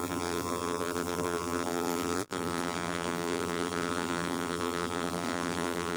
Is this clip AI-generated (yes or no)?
yes